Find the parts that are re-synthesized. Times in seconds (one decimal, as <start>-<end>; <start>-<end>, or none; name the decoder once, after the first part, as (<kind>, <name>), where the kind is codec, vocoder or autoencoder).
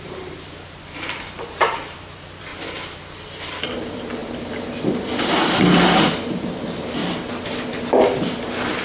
0.0-2.5 (vocoder, BigVGAN v2); 3.6-7.0; 7.5-8.8